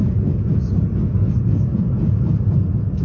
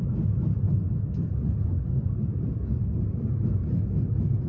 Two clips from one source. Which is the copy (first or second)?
first